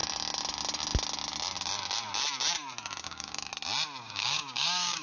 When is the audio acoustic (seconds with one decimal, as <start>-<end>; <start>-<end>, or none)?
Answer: 0.0-3.0; 3.5-4.0